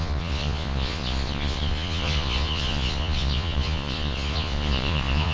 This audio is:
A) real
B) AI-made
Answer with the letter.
B